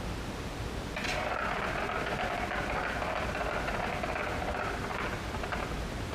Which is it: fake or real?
real